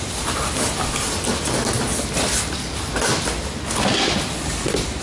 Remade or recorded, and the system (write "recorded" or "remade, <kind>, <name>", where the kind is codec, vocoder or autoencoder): recorded